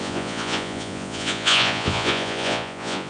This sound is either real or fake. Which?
fake